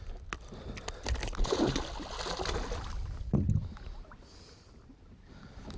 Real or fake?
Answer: real